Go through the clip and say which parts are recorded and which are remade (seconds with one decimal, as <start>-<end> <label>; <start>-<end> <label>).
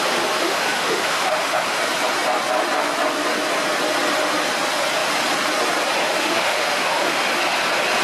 0.0-0.4 recorded; 0.4-1.8 remade; 1.8-6.0 recorded; 6.0-7.2 remade; 7.2-8.0 recorded